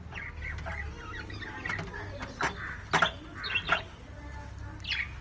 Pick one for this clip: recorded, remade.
recorded